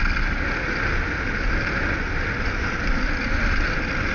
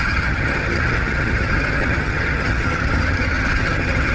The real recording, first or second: first